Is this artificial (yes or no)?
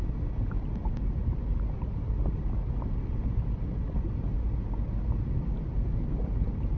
no